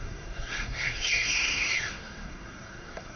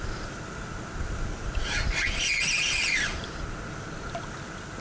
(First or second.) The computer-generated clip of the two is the first